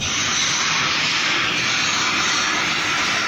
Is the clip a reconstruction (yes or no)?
no